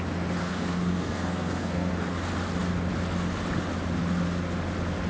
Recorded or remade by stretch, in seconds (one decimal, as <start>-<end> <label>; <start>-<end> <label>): 0.0-0.4 recorded; 0.4-1.9 remade; 1.9-5.1 recorded